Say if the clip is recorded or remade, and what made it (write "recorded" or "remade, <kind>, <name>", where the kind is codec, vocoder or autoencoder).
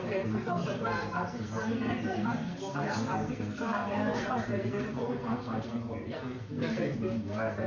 remade, codec, SNAC